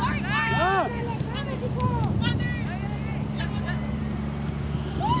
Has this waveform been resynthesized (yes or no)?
no